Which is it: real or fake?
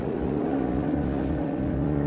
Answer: fake